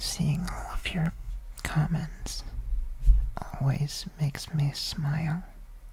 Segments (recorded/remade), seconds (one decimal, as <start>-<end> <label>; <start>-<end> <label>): 0.0-0.4 recorded; 0.4-1.3 remade; 1.3-5.9 recorded